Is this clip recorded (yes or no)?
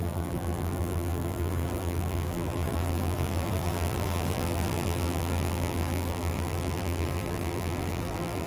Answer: no